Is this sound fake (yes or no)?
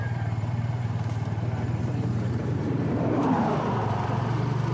yes